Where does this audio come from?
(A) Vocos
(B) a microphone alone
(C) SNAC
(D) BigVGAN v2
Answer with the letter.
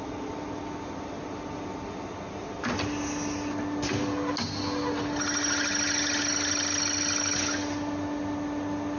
B